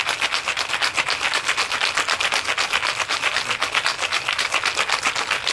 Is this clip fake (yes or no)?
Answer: no